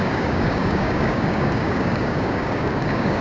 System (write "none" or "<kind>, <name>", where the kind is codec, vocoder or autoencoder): codec, DAC